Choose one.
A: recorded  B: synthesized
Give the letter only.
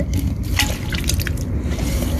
A